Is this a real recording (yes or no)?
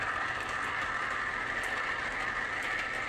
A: yes